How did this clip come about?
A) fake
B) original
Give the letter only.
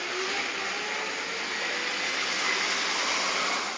B